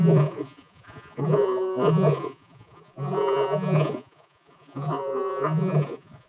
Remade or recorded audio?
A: remade